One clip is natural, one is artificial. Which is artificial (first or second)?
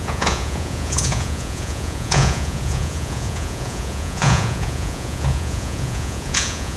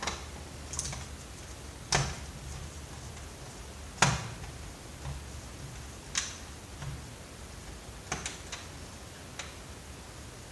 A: first